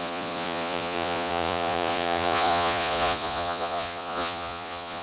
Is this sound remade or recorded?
remade